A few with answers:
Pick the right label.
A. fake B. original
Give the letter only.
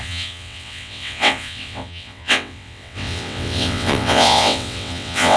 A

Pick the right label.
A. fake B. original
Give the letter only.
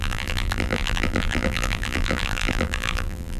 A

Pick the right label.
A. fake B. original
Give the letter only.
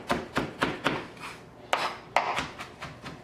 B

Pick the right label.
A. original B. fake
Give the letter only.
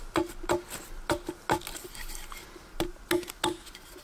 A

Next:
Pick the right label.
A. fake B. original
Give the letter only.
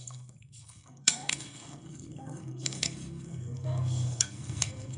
A